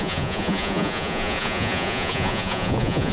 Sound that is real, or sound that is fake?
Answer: fake